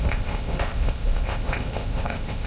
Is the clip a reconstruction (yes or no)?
yes